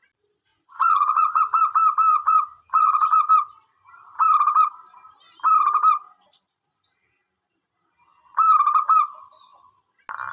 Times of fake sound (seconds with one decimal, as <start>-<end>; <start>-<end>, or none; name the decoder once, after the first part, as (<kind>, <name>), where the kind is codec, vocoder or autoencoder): 0.5-1.4 (vocoder, Vocos); 2.1-3.3